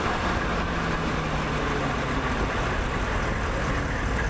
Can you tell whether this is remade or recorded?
recorded